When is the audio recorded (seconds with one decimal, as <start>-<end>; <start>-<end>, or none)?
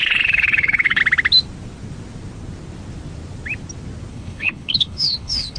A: 1.0-4.1